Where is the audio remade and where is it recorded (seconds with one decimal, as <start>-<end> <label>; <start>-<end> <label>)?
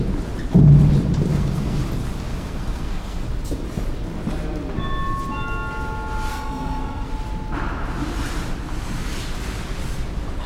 0.0-1.3 recorded; 1.3-1.8 remade; 1.8-2.3 recorded; 2.3-3.3 remade; 3.3-6.3 recorded; 6.3-7.1 remade; 7.1-10.5 recorded